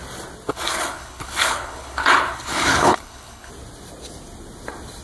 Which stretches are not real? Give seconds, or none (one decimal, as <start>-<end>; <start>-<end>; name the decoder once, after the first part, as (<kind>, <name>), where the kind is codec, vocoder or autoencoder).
0.5-3.5 (codec, HILCodec)